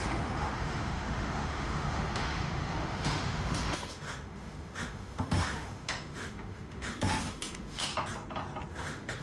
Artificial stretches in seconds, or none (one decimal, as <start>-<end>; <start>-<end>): 0.0-7.9; 8.7-9.2